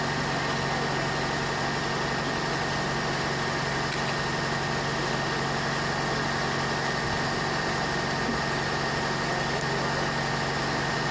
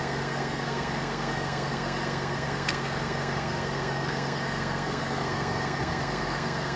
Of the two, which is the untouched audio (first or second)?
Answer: first